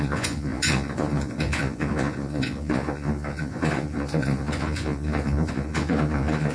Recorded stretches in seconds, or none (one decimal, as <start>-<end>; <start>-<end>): none

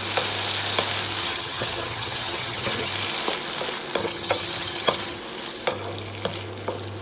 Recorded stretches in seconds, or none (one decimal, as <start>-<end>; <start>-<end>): 0.0-1.2; 2.9-4.0; 5.2-7.0